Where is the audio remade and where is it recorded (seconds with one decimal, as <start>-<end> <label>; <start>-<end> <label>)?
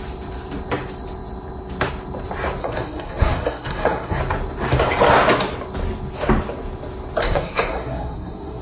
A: 0.0-2.6 recorded; 2.6-4.2 remade; 4.2-7.2 recorded; 7.2-8.6 remade